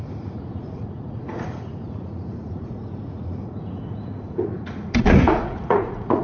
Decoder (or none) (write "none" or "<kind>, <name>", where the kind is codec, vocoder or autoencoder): vocoder, Vocos